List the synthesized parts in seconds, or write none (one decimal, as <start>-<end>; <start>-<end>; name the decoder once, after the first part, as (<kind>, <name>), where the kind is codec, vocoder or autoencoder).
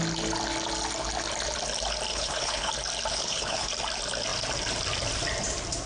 2.1-2.7 (codec, HILCodec); 3.1-3.7